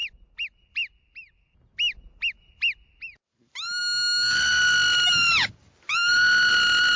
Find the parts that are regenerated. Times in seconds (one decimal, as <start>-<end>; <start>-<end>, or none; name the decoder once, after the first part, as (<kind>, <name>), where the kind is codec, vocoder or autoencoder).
none